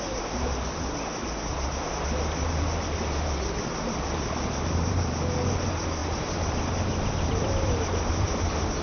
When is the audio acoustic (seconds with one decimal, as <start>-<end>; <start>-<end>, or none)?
0.0-6.0; 8.4-8.8